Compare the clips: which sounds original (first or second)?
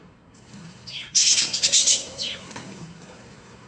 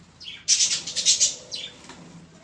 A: second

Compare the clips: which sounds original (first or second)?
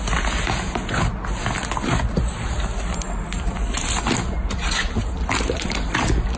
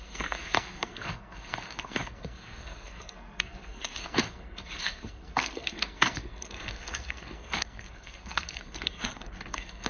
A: first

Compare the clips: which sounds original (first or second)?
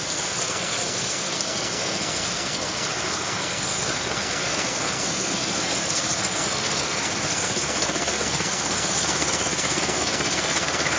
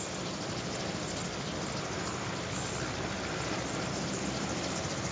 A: second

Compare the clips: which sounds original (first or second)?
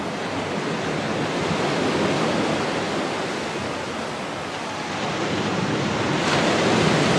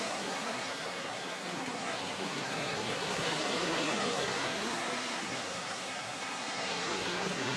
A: first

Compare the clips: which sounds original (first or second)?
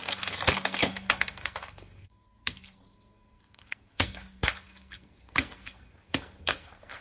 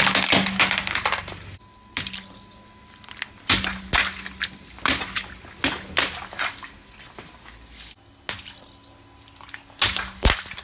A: second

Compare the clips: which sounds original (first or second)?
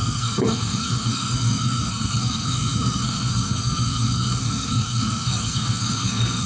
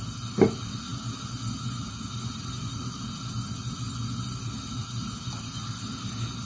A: second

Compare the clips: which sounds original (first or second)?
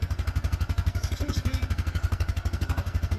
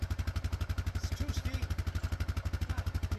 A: second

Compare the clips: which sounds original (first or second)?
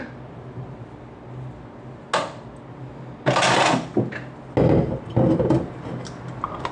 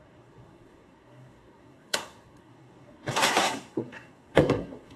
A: first